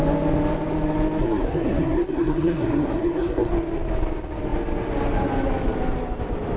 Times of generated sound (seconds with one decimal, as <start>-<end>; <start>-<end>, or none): 1.2-3.5